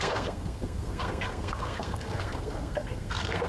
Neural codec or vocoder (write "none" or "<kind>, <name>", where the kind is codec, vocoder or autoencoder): codec, SNAC